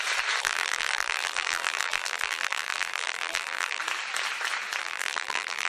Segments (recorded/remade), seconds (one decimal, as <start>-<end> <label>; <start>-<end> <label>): 0.0-0.4 recorded; 0.4-3.8 remade; 3.8-4.8 recorded; 4.8-5.7 remade